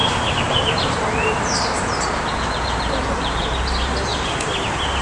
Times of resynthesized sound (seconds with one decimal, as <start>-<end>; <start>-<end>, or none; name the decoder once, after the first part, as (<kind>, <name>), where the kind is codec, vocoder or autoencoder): 0.0-4.1 (vocoder, BigVGAN v2)